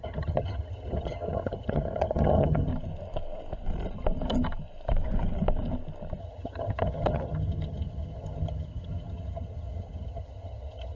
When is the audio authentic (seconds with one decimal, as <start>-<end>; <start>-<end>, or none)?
2.7-6.2